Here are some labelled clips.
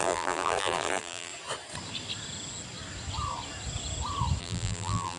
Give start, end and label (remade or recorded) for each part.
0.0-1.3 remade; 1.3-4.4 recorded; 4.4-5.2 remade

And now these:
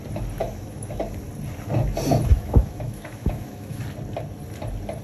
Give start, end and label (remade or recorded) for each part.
0.0-0.4 recorded; 0.4-1.0 remade; 1.0-2.3 recorded; 2.3-3.8 remade; 3.8-5.0 recorded

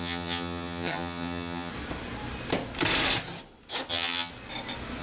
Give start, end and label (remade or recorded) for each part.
0.0-1.7 remade; 1.7-3.9 recorded; 3.9-4.3 remade; 4.3-5.0 recorded

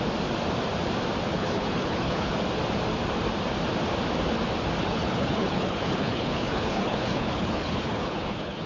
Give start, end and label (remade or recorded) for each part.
0.0-1.3 recorded; 1.3-2.3 remade; 2.3-4.8 recorded; 4.8-8.7 remade